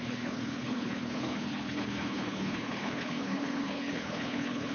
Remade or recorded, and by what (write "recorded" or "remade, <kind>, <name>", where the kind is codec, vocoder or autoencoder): remade, codec, HILCodec